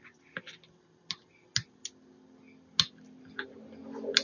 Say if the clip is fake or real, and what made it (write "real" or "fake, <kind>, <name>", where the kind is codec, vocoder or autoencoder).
real